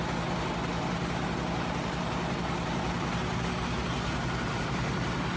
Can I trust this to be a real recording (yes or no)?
yes